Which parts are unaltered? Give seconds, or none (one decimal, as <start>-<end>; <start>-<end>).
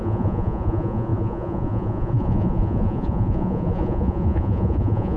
none